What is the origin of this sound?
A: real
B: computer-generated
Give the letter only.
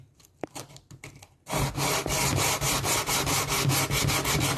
A